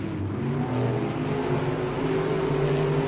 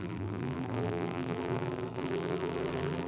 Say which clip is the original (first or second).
first